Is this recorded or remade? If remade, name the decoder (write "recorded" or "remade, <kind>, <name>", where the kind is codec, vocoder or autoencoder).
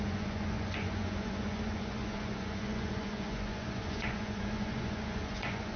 remade, vocoder, Vocos